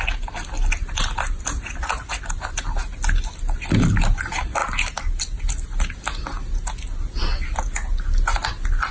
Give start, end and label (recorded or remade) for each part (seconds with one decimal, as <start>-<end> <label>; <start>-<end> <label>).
0.0-8.9 recorded